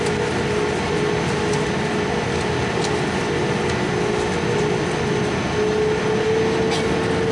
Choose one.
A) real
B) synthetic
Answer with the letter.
A